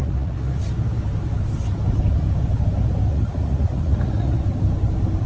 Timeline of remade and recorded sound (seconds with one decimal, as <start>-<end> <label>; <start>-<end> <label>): 0.0-0.6 remade; 0.6-3.1 recorded; 3.1-4.4 remade; 4.4-5.3 recorded